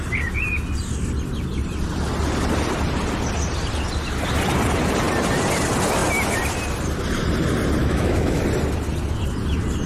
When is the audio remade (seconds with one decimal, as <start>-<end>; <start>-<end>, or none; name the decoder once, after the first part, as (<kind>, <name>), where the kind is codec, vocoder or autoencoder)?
7.8-8.4 (autoencoder, DAC-VAE)